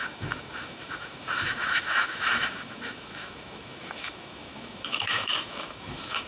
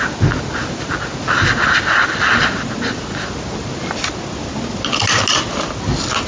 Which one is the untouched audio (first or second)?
second